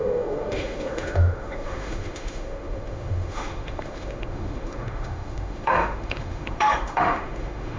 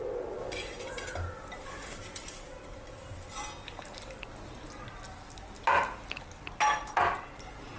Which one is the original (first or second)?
second